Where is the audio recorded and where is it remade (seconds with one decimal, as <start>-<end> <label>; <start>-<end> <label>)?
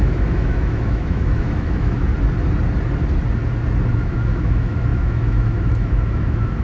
0.0-2.1 remade; 2.1-3.9 recorded; 3.9-6.6 remade